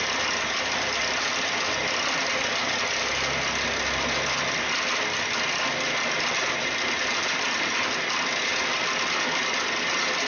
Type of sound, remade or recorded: recorded